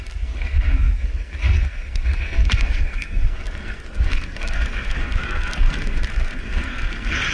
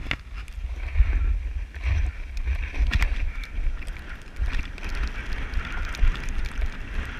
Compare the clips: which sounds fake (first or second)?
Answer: first